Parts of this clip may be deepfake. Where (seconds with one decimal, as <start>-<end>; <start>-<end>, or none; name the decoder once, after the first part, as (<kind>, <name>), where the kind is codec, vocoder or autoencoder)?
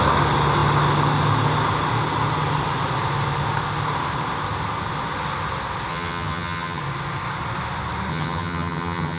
5.9-6.8 (vocoder, HiFi-GAN); 8.1-9.2